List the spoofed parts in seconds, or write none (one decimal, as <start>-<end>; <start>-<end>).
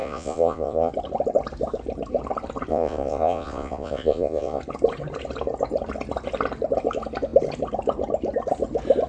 0.0-0.9; 2.7-4.6